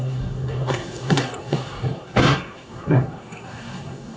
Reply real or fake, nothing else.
fake